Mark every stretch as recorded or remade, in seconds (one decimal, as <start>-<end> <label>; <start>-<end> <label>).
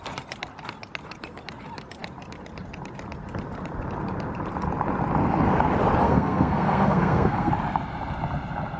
0.0-6.0 recorded; 6.0-7.5 remade; 7.5-8.8 recorded